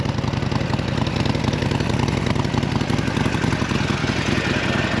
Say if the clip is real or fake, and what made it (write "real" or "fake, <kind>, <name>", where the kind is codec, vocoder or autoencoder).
real